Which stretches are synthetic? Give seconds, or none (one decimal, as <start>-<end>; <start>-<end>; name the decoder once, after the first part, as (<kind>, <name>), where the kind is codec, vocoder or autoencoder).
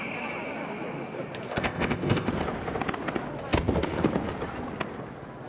1.5-2.3 (codec, ZipCodec)